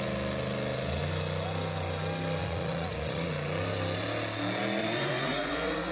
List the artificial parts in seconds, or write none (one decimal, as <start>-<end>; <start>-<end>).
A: 2.4-3.3; 4.8-5.9